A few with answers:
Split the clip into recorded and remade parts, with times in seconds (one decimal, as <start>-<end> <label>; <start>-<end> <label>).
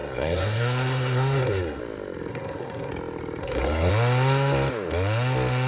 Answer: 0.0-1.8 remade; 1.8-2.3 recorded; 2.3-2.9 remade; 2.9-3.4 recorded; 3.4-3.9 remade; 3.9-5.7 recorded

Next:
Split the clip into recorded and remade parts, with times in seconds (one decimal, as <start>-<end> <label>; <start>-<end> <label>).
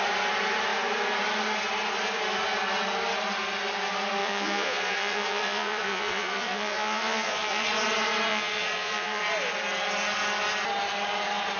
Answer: 0.0-4.2 recorded; 4.2-7.7 remade; 7.7-8.3 recorded; 8.3-9.2 remade; 9.2-11.6 recorded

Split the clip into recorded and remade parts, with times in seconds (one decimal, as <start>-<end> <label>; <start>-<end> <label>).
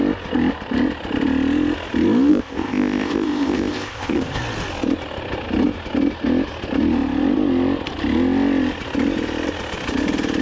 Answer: 0.0-2.3 recorded; 2.3-4.4 remade; 4.4-10.4 recorded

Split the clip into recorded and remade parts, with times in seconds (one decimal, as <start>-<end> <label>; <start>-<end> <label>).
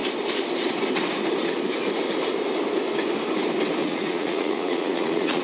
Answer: 0.0-3.8 recorded; 3.8-5.4 remade